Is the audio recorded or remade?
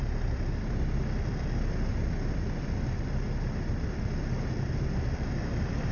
remade